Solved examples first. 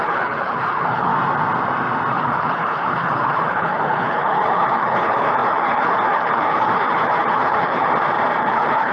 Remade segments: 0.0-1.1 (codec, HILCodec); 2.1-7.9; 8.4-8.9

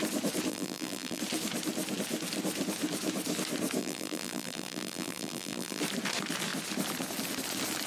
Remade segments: 0.5-1.2 (vocoder, BigVGAN v2); 3.8-5.8

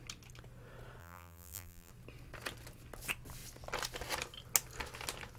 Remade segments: 1.0-1.9 (vocoder, BigVGAN v2)

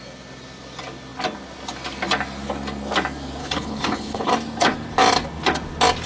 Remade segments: 3.4-4.3 (codec, HILCodec)

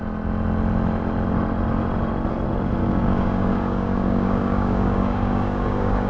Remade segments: 2.8-6.1 (codec, DAC)

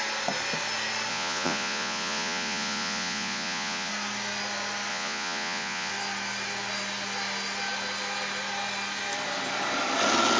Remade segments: 1.1-3.9 (vocoder, Vocos); 4.9-5.9

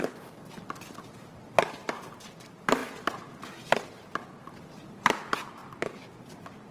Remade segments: none

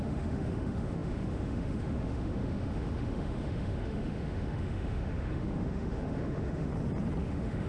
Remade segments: 0.0-6.7 (autoencoder, DAC-VAE); 7.2-7.7